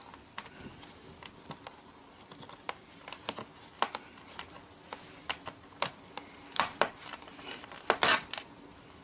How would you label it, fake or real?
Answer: real